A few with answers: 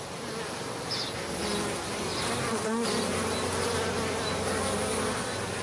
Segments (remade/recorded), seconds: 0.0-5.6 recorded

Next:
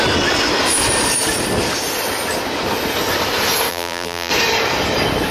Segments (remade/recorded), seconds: 0.0-3.7 recorded; 3.7-4.3 remade; 4.3-5.3 recorded

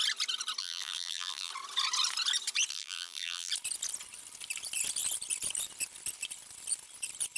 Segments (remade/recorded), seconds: 0.0-0.6 recorded; 0.6-1.5 remade; 1.5-2.7 recorded; 2.7-3.5 remade; 3.5-7.4 recorded

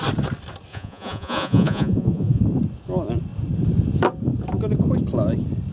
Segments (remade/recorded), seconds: 0.0-0.7 recorded; 0.7-2.4 remade; 2.4-5.7 recorded

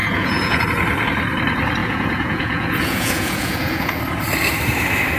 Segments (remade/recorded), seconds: 0.0-0.6 remade; 0.6-1.8 recorded; 1.8-4.0 remade; 4.0-5.2 recorded

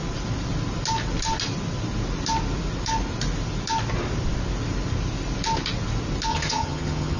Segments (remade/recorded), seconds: 0.0-6.3 recorded; 6.3-7.2 remade

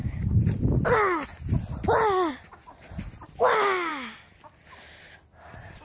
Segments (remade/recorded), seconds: 0.0-5.8 recorded